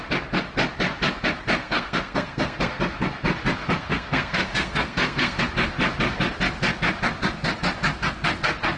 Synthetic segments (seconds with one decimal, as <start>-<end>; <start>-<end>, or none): 1.6-2.8; 3.6-5.4